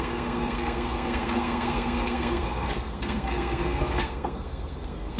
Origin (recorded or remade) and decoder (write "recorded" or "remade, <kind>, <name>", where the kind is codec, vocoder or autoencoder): remade, codec, SNAC